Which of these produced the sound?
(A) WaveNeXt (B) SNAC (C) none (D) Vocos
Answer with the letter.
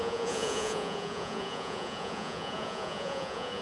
D